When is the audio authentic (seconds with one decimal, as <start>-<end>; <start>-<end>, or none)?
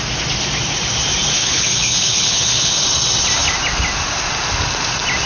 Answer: 0.0-1.4; 2.7-5.3